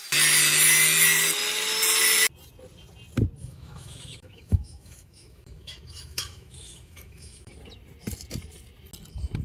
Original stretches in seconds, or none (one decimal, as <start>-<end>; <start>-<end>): 0.0-3.4; 7.5-9.4